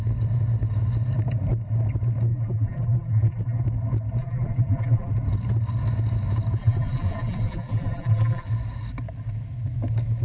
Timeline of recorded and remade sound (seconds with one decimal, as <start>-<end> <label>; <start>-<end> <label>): 0.0-2.3 recorded; 2.3-3.6 remade; 3.6-4.2 recorded; 4.2-5.1 remade; 5.1-6.6 recorded; 6.6-8.5 remade; 8.5-10.2 recorded